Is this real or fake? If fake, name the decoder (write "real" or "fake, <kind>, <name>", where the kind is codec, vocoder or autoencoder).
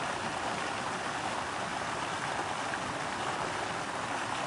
real